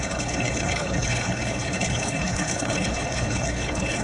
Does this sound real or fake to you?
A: fake